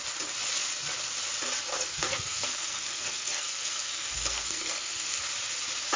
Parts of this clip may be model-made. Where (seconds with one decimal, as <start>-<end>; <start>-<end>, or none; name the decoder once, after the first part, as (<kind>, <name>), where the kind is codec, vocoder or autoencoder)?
1.6-5.2 (codec, SNAC)